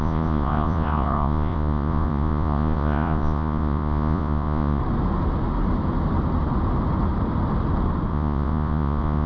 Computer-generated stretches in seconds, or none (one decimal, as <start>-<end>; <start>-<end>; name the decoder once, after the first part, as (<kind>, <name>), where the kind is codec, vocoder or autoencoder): 0.0-4.8 (vocoder, Vocos); 8.1-9.3